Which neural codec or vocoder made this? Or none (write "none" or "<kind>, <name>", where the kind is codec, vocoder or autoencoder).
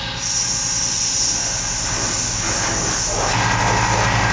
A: none